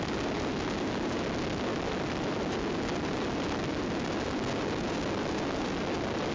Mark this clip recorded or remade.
recorded